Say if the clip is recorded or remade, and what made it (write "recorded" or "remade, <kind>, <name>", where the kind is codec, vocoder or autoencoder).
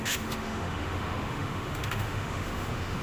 remade, autoencoder, DAC-VAE